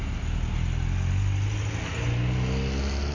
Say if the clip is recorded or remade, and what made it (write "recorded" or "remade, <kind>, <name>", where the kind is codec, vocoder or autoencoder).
recorded